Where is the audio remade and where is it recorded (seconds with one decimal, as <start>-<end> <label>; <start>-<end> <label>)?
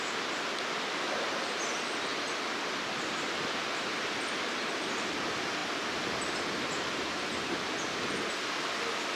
0.0-9.2 recorded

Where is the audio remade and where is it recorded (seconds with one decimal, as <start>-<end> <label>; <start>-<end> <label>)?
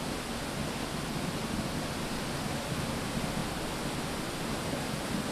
0.0-5.3 recorded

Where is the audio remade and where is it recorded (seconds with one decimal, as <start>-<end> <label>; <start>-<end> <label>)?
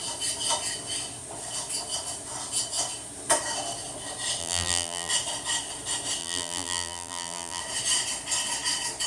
0.0-4.4 recorded; 4.4-5.1 remade; 5.1-6.2 recorded; 6.2-7.6 remade; 7.6-9.1 recorded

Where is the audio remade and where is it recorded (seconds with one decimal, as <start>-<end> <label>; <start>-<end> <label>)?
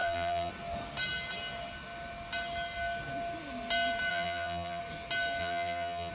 0.0-0.5 remade; 0.5-4.1 recorded; 4.1-4.8 remade; 4.8-5.4 recorded; 5.4-6.1 remade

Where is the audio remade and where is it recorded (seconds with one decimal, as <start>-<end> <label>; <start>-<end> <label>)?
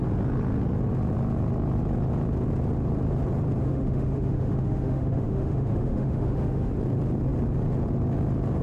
0.0-3.6 recorded; 3.6-6.7 remade; 6.7-8.6 recorded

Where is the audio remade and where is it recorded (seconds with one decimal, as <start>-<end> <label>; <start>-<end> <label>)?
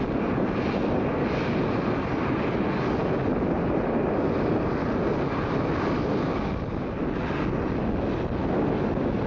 0.0-9.3 recorded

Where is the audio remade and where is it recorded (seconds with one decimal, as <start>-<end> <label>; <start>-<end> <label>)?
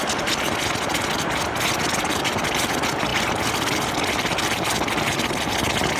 0.0-6.0 recorded